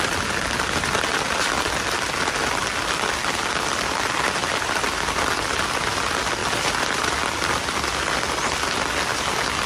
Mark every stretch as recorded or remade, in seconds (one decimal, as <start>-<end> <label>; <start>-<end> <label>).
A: 0.0-4.4 recorded; 4.4-4.9 remade; 4.9-9.7 recorded